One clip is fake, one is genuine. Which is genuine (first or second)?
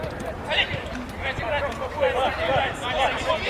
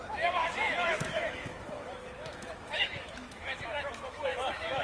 first